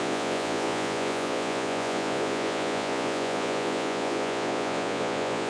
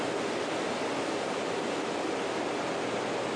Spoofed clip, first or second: first